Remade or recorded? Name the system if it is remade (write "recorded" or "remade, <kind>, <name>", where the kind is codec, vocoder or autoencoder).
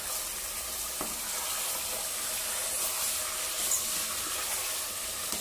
recorded